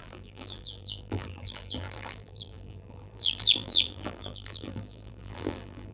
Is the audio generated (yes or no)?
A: yes